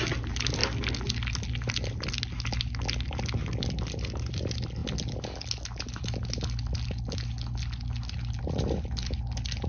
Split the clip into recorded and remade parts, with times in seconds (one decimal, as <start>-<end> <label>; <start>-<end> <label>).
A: 0.0-9.7 recorded